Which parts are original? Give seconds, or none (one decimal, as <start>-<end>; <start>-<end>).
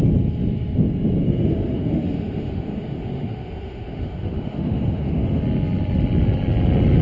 0.0-1.2; 5.4-7.0